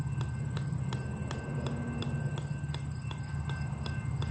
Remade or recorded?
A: recorded